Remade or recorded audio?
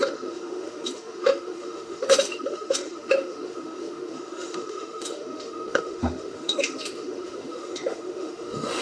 remade